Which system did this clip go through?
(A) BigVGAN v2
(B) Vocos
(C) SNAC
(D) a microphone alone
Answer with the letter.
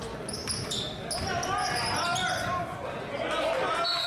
D